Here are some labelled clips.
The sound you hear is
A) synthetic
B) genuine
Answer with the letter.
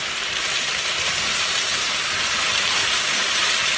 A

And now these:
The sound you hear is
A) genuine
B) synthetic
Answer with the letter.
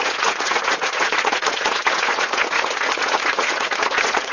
B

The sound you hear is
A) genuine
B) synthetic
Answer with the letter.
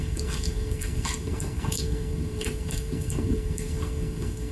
B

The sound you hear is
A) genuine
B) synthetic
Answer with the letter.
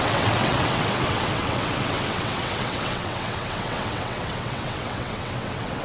B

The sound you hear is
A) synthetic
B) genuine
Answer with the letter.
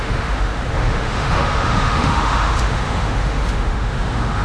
A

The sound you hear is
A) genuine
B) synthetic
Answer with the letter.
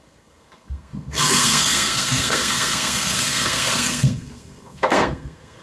B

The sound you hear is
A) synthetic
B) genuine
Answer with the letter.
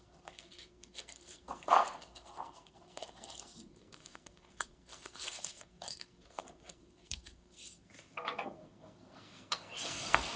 A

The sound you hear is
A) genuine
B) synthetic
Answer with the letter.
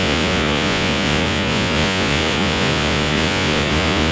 B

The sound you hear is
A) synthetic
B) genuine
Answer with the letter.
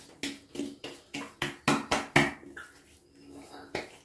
B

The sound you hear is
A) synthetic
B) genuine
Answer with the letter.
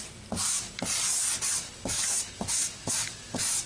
B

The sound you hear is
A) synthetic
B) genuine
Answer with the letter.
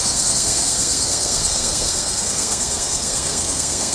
A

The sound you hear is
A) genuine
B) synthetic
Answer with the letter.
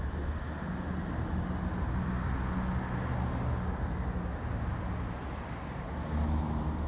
A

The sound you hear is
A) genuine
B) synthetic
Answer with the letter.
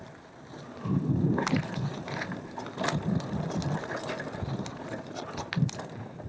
A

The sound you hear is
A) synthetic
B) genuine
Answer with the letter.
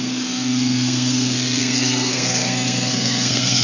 A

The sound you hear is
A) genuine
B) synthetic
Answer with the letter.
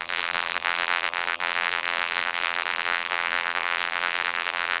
B